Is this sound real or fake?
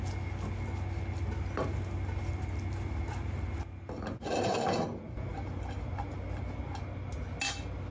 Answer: real